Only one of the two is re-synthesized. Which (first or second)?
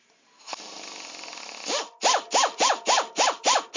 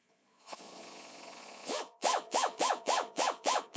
second